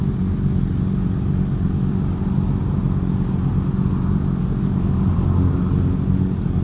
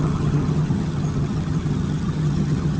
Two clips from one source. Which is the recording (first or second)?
first